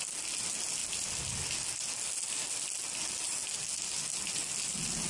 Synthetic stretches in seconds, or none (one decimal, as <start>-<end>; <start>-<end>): none